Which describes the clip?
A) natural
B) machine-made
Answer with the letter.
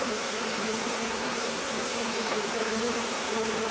B